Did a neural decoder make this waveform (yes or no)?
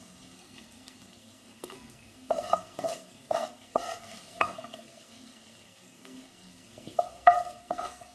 yes